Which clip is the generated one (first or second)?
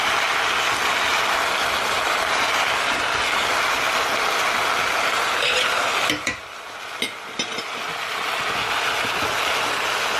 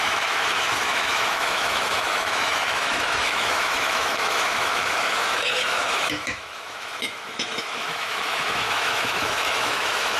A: second